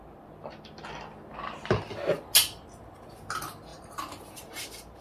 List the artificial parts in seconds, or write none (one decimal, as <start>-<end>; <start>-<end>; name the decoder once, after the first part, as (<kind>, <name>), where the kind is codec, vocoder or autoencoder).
3.7-4.6 (vocoder, BigVGAN v2)